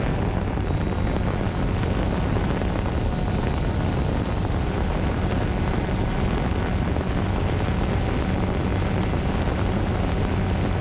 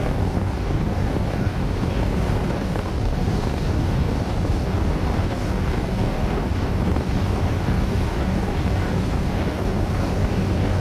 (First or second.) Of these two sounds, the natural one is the first